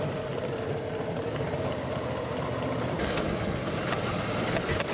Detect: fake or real real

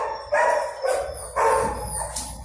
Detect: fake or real real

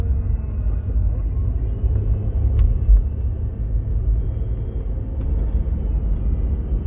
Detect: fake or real real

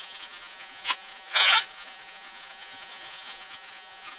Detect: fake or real fake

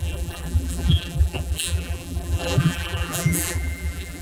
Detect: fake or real fake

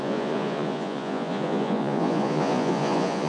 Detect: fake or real fake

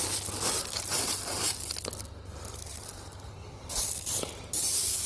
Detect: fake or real real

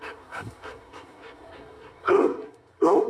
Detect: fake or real fake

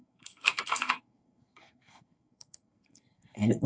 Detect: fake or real fake